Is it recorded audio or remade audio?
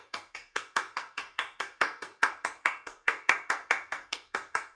remade